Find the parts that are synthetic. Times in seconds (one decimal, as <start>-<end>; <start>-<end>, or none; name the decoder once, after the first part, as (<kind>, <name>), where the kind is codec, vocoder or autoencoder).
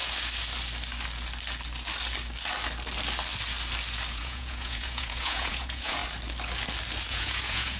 4.1-6.0 (vocoder, Vocos); 7.1-7.8